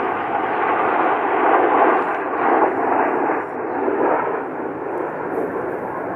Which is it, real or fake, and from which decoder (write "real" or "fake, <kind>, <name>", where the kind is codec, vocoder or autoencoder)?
fake, vocoder, BigVGAN v2